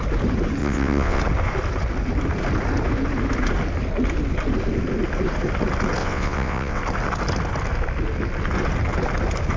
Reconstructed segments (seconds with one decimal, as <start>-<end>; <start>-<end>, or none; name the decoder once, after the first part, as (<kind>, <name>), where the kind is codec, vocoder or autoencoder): 0.6-1.2 (vocoder, WaveNeXt); 6.0-6.8